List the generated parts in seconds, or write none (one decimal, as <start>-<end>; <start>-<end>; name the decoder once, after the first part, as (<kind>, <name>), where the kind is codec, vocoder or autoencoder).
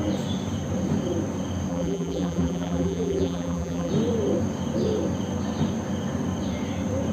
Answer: 1.7-3.9 (vocoder, BigVGAN v2)